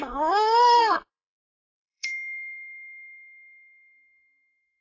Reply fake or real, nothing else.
fake